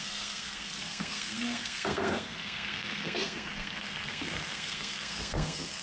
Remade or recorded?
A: remade